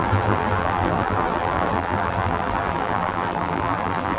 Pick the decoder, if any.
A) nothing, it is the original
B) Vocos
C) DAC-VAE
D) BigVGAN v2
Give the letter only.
D